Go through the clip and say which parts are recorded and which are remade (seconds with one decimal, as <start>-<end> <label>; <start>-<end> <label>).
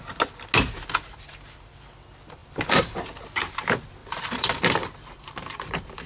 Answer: 0.0-2.4 recorded; 2.4-3.0 remade; 3.0-4.0 recorded; 4.0-6.1 remade